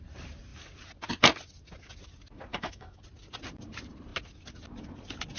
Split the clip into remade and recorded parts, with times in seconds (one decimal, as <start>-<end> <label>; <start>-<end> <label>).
0.0-2.5 recorded; 2.5-3.0 remade; 3.0-5.4 recorded